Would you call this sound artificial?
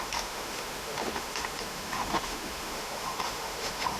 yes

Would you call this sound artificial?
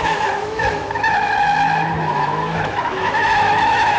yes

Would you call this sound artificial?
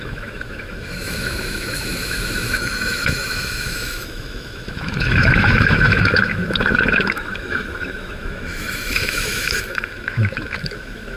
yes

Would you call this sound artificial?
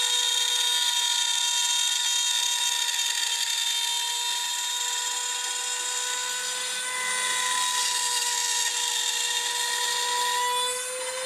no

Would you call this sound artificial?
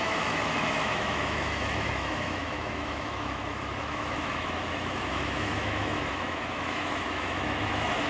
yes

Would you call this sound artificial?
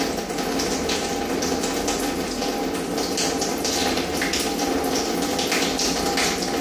no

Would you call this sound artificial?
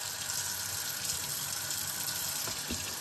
no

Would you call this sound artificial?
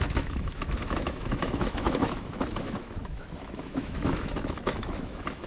yes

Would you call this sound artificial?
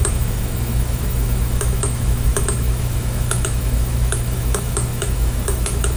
yes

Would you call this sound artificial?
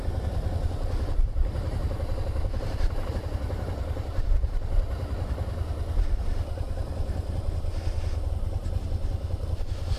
no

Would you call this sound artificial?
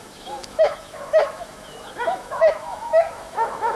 yes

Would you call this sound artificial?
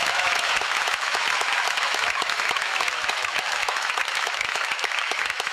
yes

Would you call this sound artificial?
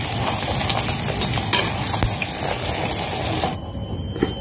no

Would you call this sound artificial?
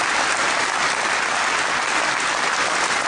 no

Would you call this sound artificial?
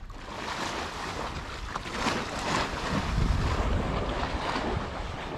no